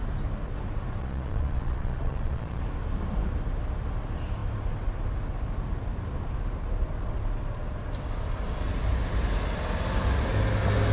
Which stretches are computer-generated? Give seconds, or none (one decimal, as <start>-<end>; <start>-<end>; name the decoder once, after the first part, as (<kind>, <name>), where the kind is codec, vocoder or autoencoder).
1.0-2.6 (vocoder, Vocos)